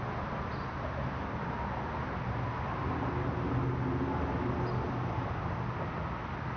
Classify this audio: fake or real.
real